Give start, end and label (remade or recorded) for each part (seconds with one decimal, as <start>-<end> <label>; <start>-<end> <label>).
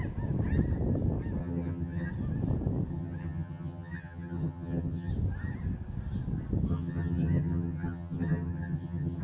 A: 0.0-1.4 recorded; 1.4-2.1 remade; 2.1-2.9 recorded; 2.9-5.1 remade; 5.1-6.7 recorded; 6.7-9.2 remade